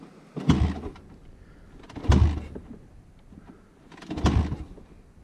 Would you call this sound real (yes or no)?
yes